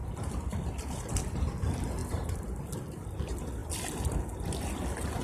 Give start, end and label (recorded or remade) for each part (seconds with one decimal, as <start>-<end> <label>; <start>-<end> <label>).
0.0-1.6 remade; 1.6-2.0 recorded; 2.0-2.7 remade; 2.7-5.2 recorded